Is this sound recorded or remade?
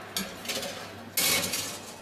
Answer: recorded